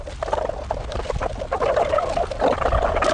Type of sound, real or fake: real